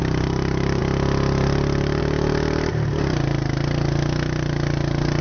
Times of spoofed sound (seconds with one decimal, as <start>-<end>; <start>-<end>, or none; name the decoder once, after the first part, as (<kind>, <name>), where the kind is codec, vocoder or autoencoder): 0.0-0.8 (vocoder, BigVGAN v2); 2.0-2.7